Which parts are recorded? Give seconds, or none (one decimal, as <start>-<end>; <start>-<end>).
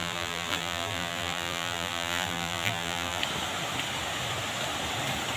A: 3.2-5.4